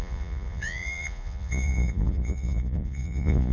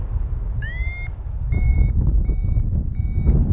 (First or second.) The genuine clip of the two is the second